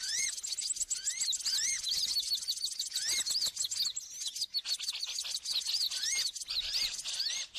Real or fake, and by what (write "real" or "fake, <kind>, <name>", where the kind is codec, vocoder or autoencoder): real